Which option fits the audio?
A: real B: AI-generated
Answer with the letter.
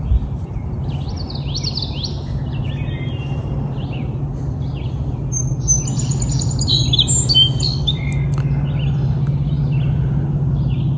A